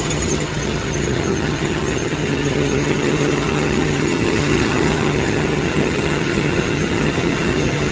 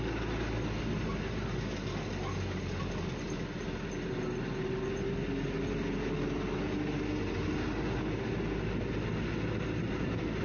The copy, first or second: first